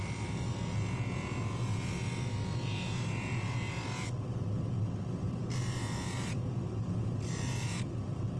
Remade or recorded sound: recorded